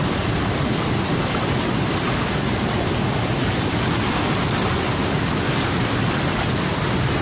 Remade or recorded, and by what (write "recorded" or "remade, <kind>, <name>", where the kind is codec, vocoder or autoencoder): recorded